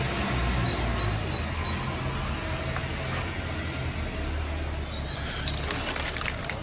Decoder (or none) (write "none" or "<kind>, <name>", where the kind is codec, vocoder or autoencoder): none